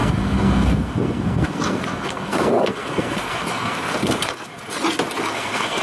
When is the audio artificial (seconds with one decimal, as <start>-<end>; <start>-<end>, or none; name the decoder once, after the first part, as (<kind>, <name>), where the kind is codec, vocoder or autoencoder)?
0.0-4.5 (codec, SNAC); 5.2-5.8